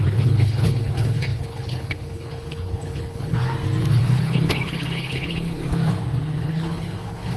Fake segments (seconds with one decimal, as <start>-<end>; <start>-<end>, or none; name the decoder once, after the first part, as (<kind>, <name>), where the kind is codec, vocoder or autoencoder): 0.0-3.4 (codec, HILCodec); 3.9-5.6; 6.4-7.4